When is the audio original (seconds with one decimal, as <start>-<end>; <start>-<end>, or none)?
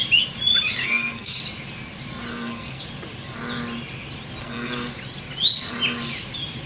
0.0-0.8; 1.4-2.3; 2.8-4.4; 4.9-6.7